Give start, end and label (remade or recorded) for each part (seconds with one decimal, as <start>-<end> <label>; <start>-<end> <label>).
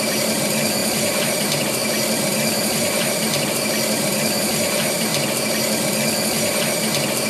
0.0-5.1 remade; 5.1-7.3 recorded